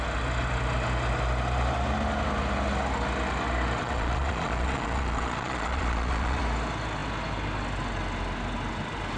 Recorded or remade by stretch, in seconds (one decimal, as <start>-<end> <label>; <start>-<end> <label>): 0.0-3.8 recorded; 3.8-6.4 remade; 6.4-9.2 recorded